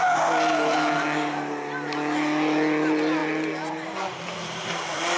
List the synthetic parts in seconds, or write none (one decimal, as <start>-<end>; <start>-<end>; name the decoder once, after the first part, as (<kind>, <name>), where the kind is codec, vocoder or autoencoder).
none

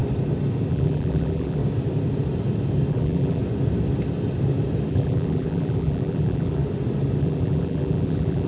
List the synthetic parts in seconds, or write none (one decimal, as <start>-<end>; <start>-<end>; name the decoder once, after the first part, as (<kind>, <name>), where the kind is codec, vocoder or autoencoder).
0.7-1.6 (vocoder, BigVGAN v2); 2.9-3.4; 4.9-6.6; 7.2-8.5

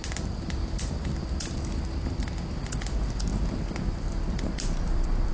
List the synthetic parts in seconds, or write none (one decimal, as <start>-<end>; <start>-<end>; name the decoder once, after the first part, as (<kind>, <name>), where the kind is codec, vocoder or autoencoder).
0.0-1.0 (vocoder, BigVGAN v2); 3.3-5.3